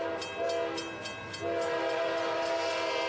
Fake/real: real